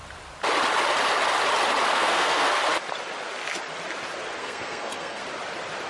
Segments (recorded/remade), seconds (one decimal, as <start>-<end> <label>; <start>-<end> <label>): 0.0-1.9 recorded; 1.9-2.6 remade; 2.6-4.4 recorded; 4.4-5.2 remade; 5.2-5.9 recorded